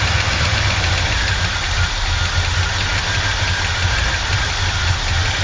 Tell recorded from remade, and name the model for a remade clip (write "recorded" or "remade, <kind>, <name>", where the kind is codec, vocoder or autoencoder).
recorded